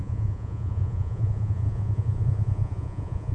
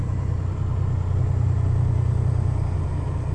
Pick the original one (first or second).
second